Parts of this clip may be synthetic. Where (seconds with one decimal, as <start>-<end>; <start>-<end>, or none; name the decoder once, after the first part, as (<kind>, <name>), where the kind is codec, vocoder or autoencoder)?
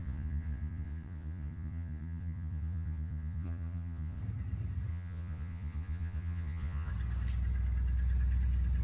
0.0-4.2 (vocoder, Vocos); 4.9-6.9